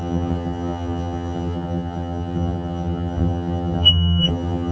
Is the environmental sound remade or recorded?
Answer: remade